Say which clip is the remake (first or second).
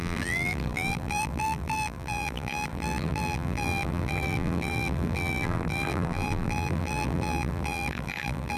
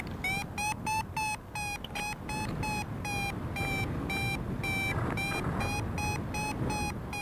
first